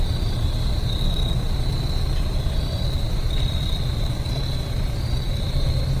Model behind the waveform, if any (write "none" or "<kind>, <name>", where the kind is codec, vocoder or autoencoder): none